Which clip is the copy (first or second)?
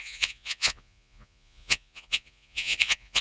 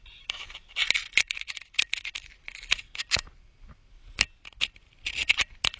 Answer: first